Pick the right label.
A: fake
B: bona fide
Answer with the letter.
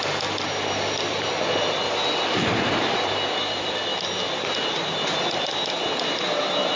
B